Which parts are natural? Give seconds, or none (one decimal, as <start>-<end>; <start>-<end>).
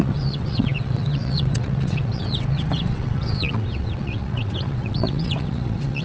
none